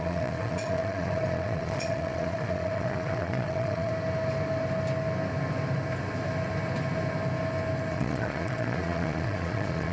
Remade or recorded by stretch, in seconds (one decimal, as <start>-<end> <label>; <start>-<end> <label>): 0.0-3.9 remade; 3.9-7.9 recorded; 7.9-9.9 remade